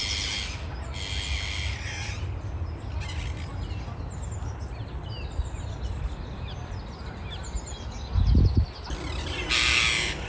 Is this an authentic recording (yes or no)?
yes